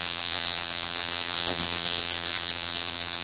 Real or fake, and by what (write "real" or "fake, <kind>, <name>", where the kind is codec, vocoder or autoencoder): fake, vocoder, BigVGAN v2